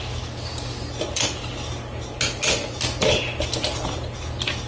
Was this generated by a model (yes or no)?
no